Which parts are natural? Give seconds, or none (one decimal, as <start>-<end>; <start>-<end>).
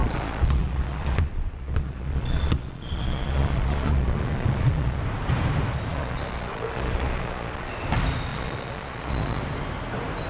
5.0-5.9; 7.7-8.3; 9.4-10.3